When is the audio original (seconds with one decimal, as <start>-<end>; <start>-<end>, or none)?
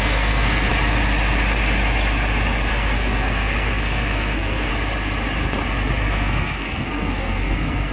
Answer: 0.7-2.7; 4.7-6.0